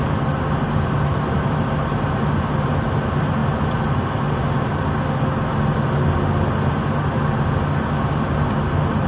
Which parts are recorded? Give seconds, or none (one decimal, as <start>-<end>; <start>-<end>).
0.0-9.1